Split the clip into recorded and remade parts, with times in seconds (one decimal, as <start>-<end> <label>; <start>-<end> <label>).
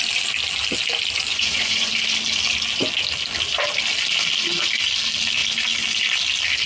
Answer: 0.0-1.3 recorded; 1.3-1.9 remade; 1.9-6.7 recorded